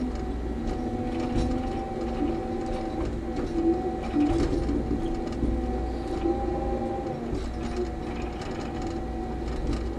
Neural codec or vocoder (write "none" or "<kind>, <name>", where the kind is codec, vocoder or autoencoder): none